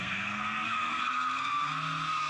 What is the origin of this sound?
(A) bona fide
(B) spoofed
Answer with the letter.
B